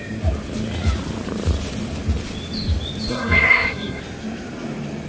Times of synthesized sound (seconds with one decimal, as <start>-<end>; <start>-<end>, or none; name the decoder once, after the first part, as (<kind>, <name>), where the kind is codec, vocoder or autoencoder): 3.1-4.0 (codec, SNAC)